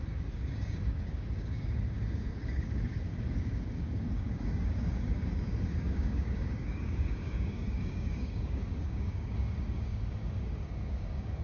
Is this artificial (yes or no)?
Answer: yes